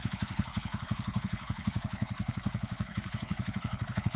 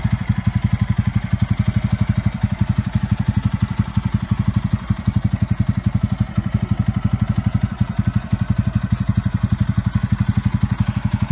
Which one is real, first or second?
second